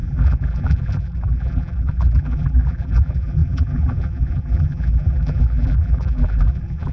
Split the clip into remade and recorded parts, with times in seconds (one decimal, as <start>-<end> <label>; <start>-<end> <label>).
0.0-6.9 remade